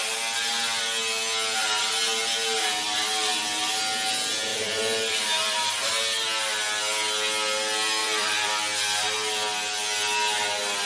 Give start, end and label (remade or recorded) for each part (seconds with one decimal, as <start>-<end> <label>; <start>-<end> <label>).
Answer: 0.0-4.5 recorded; 4.5-5.9 remade; 5.9-8.0 recorded; 8.0-8.5 remade; 8.5-10.9 recorded